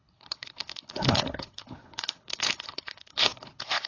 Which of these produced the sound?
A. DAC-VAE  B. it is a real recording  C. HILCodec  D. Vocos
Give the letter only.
C